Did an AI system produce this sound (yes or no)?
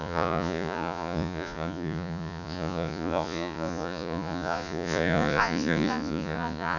yes